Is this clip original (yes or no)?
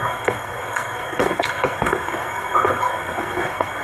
no